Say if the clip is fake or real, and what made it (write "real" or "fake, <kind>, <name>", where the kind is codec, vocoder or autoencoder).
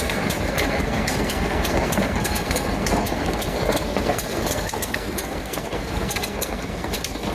fake, codec, SNAC